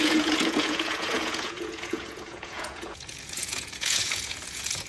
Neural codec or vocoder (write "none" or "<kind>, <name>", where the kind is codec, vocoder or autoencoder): vocoder, Vocos